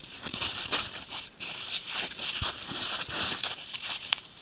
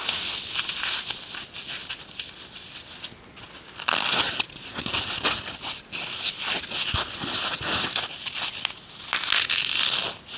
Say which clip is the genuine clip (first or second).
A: second